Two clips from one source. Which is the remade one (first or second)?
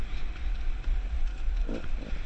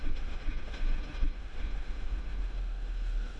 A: second